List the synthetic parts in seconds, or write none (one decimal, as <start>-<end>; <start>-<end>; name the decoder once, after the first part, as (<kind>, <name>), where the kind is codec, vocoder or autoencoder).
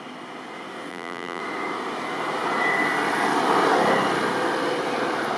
0.9-1.4 (vocoder, BigVGAN v2)